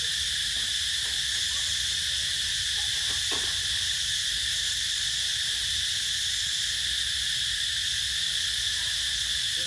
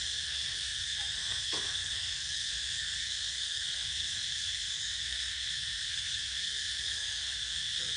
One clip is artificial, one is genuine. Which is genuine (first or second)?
first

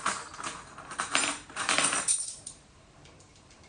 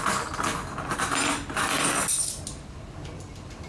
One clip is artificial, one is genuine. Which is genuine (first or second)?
second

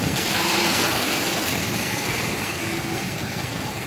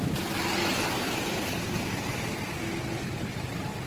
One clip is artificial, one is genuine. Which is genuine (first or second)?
second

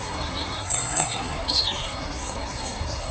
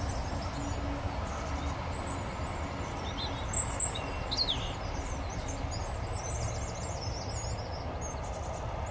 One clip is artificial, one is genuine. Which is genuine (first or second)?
second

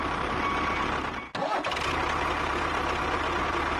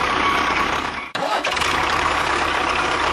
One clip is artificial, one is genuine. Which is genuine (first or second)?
first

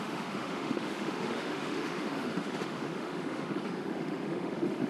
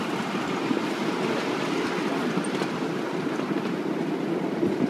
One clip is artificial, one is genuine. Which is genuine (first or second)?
second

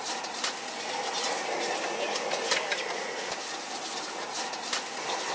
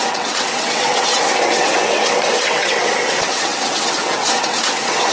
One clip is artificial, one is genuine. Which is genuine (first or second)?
first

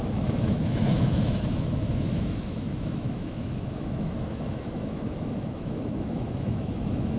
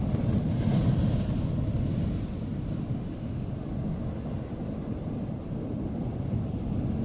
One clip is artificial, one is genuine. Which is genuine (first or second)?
second